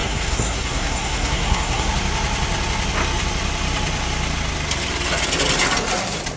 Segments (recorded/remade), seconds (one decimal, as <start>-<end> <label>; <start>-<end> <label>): 0.0-1.9 remade; 1.9-6.4 recorded